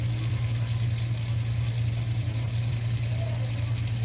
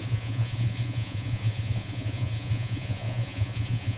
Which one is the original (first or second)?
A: first